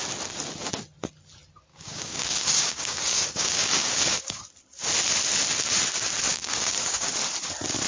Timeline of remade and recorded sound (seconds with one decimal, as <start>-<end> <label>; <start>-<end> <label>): 0.0-1.7 recorded; 1.7-4.5 remade; 4.5-6.3 recorded; 6.3-7.1 remade; 7.1-7.9 recorded